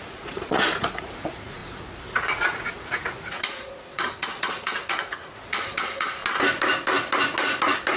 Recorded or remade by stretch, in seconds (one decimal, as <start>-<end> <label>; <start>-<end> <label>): 0.0-6.2 remade; 6.2-8.0 recorded